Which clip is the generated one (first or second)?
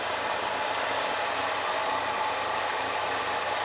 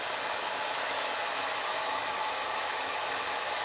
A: second